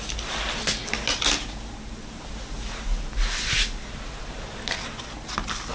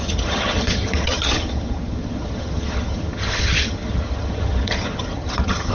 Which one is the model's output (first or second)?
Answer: second